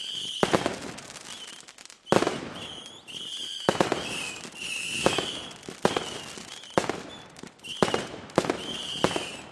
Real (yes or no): yes